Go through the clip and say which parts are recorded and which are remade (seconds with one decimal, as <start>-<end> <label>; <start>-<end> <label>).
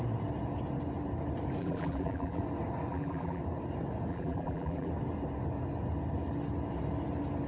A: 0.0-1.6 recorded; 1.6-2.4 remade; 2.4-2.9 recorded; 2.9-3.4 remade; 3.4-4.1 recorded; 4.1-4.9 remade; 4.9-7.5 recorded